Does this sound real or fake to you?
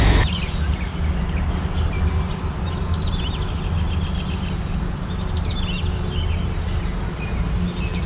real